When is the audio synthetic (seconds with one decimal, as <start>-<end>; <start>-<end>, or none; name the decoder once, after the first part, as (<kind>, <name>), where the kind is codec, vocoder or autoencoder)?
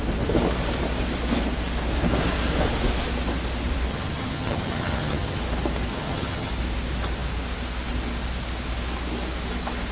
3.9-5.4 (vocoder, HiFi-GAN); 5.9-6.5